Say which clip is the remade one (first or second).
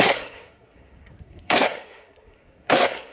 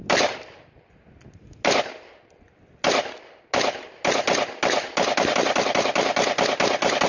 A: first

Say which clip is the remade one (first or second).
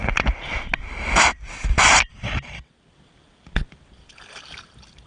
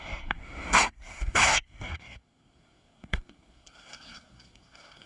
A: second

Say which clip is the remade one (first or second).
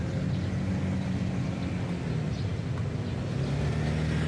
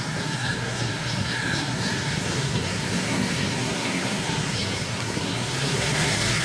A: second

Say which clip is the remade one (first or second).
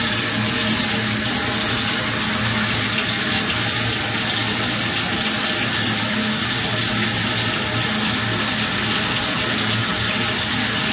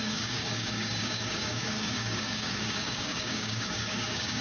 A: second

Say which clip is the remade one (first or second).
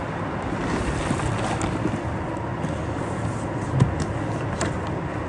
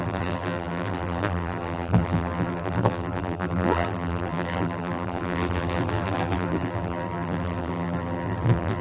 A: second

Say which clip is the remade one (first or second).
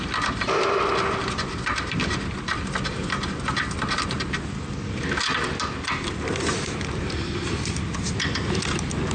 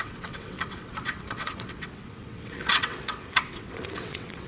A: second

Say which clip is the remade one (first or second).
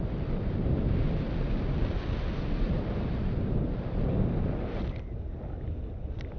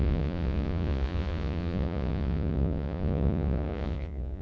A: second